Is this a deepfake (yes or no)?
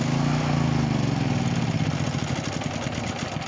no